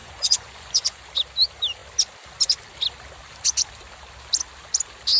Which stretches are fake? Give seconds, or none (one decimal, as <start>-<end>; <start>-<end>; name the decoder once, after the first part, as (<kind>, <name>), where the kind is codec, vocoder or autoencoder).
0.0-1.0 (vocoder, Vocos)